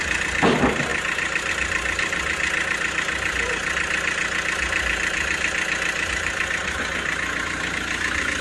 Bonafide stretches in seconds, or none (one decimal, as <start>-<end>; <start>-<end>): 0.0-8.4